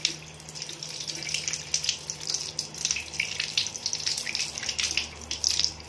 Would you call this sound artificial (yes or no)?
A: no